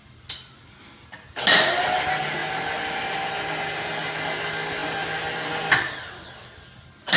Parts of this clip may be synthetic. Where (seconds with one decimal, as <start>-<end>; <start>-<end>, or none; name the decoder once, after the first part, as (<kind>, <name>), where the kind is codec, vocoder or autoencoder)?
none